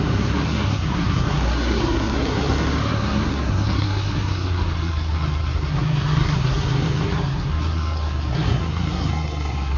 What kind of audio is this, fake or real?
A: fake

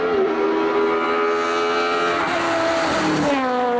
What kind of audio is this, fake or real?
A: real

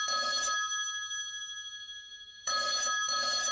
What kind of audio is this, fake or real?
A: fake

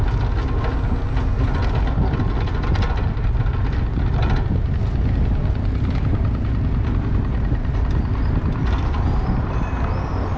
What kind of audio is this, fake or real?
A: real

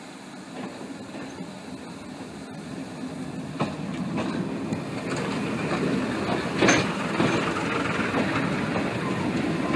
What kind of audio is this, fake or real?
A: real